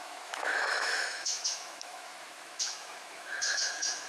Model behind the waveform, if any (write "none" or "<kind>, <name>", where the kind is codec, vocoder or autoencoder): autoencoder, DAC-VAE